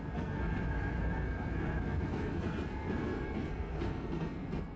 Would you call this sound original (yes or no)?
no